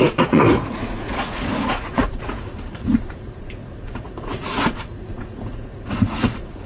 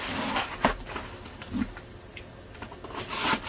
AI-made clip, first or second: first